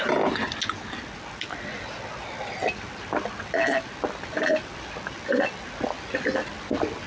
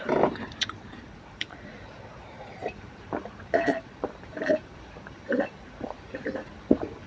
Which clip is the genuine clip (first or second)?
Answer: first